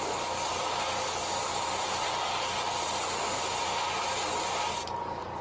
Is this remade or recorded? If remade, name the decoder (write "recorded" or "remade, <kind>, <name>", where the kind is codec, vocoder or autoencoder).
recorded